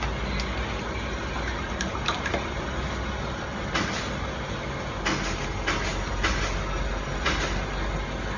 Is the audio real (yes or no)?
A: yes